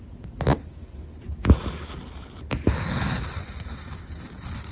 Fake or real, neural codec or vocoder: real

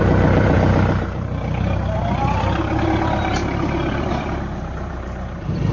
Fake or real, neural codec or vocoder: fake, vocoder, BigVGAN v2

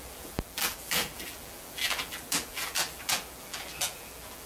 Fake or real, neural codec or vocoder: fake, vocoder, BigVGAN v2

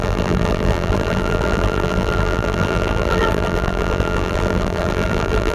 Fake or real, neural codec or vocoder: fake, vocoder, BigVGAN v2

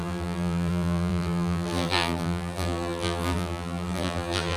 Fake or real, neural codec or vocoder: fake, vocoder, BigVGAN v2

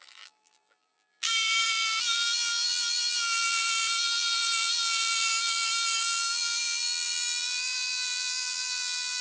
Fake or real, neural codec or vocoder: fake, vocoder, BigVGAN v2